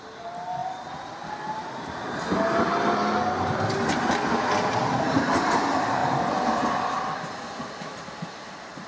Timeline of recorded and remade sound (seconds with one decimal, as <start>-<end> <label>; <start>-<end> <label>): 0.0-0.6 recorded; 0.6-1.9 remade; 1.9-6.0 recorded; 6.0-8.9 remade